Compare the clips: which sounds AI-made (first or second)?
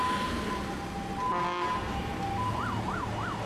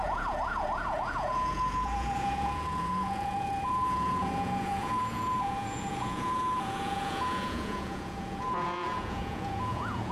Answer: second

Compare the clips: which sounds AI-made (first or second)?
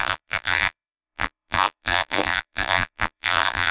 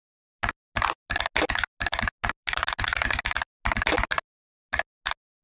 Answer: first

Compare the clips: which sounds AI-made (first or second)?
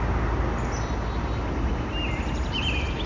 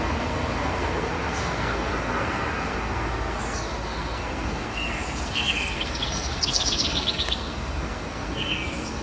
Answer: second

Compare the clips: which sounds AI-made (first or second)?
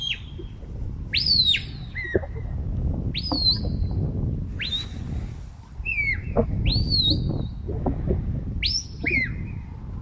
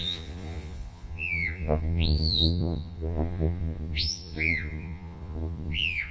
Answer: second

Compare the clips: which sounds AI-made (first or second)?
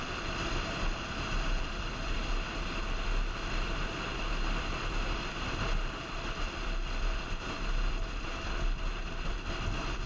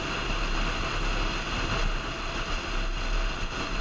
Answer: first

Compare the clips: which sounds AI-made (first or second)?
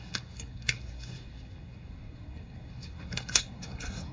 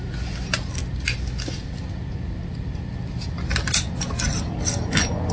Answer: first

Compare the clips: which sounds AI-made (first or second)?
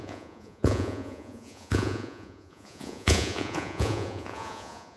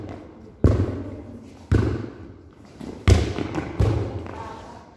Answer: first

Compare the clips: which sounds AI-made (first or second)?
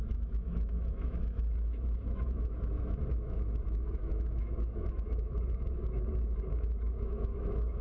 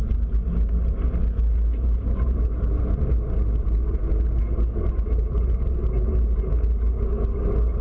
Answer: first